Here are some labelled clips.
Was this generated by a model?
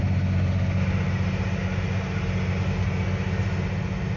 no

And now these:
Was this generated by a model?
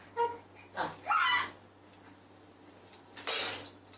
no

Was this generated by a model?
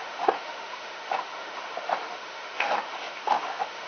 yes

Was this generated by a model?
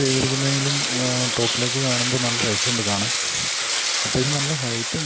no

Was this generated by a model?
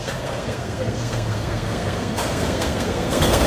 yes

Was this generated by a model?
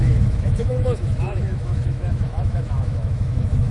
yes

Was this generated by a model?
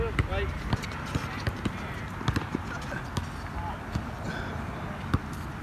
no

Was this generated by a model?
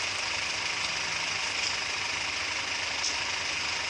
no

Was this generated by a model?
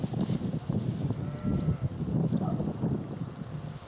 no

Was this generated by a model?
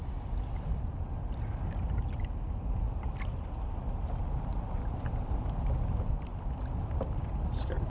no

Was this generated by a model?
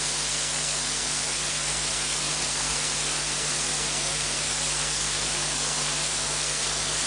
yes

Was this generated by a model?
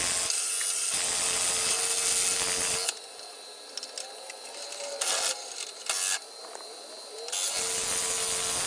no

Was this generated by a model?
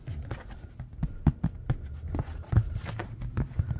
no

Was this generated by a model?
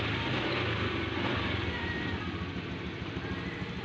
no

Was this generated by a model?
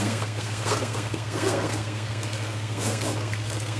yes